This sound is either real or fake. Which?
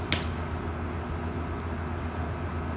real